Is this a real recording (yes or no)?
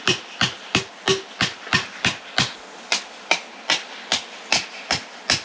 yes